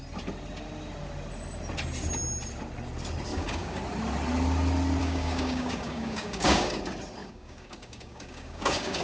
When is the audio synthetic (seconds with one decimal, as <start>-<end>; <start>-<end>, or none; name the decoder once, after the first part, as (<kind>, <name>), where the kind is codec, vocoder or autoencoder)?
3.3-3.8 (codec, DAC); 5.0-6.8; 7.2-9.0